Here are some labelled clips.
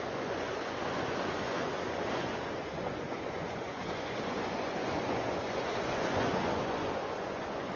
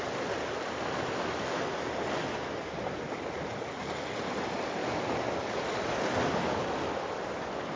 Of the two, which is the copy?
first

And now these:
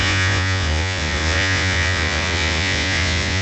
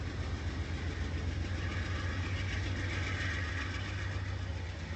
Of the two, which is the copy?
first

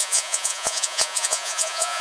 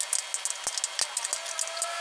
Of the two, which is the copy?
first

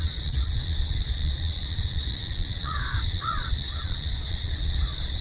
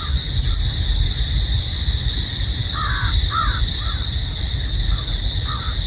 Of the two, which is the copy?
first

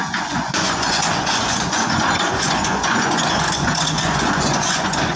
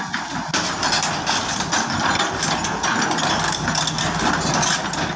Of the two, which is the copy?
first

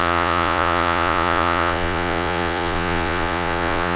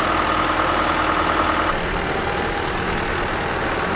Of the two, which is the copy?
first